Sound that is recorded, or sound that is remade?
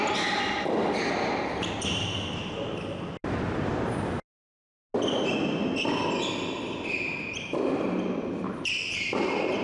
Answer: recorded